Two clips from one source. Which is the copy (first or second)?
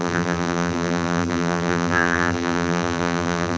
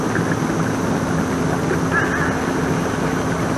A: first